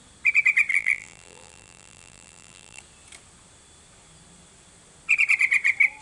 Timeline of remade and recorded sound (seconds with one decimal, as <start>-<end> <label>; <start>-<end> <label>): 0.0-0.7 recorded; 0.7-2.8 remade; 2.8-6.0 recorded